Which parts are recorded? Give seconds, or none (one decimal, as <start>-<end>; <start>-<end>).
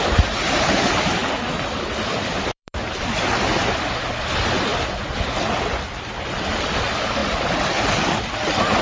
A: none